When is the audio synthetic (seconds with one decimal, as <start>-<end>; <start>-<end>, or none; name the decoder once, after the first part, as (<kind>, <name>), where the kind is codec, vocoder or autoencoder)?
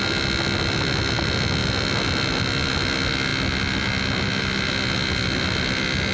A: none